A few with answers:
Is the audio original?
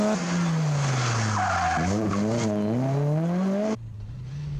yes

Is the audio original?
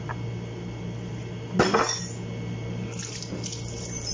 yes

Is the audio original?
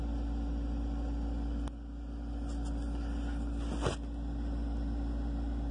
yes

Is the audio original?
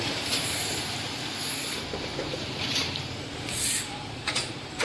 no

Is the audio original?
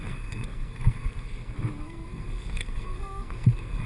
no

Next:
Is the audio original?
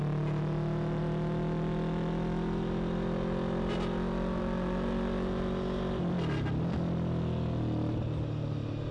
yes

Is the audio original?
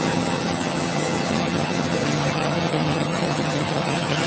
no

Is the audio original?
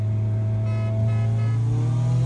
yes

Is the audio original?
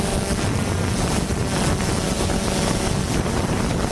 yes